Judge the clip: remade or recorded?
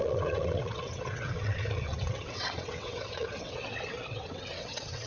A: remade